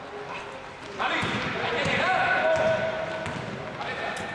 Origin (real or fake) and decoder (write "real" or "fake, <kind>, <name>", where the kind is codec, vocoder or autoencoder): real